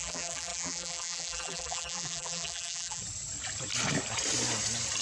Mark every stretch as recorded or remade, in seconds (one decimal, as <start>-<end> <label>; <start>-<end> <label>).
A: 0.0-3.0 remade; 3.0-5.0 recorded